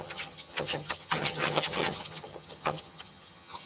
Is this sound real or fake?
fake